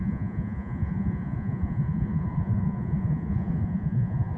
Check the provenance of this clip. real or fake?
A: fake